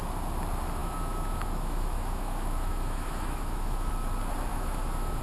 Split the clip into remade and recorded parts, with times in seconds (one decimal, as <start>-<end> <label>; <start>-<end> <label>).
0.0-0.8 recorded; 0.8-3.9 remade; 3.9-4.5 recorded; 4.5-5.2 remade

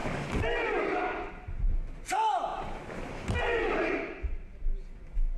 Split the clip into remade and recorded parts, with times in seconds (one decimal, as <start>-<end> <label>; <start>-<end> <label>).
0.0-5.4 recorded

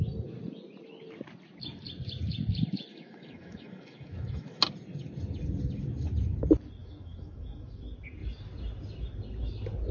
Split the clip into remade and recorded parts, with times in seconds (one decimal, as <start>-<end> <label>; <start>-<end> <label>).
0.0-2.9 recorded; 2.9-4.6 remade; 4.6-6.8 recorded; 6.8-7.8 remade; 7.8-9.9 recorded

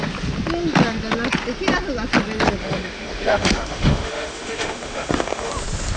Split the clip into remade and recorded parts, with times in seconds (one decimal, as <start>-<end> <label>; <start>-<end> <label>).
0.0-2.6 recorded; 2.6-5.5 remade; 5.5-6.0 recorded